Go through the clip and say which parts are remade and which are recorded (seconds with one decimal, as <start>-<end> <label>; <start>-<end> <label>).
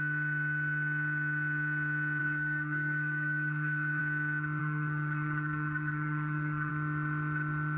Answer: 0.0-2.2 recorded; 2.2-4.0 remade; 4.0-4.6 recorded; 4.6-6.7 remade; 6.7-7.8 recorded